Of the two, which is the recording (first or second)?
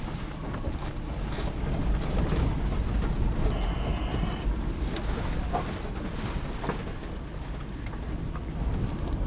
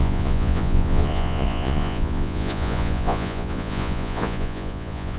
first